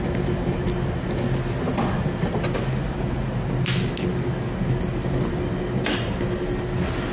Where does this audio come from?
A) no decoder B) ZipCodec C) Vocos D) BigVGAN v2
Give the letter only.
A